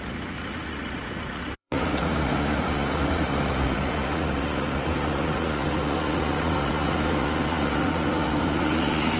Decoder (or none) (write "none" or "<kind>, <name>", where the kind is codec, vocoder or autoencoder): vocoder, Vocos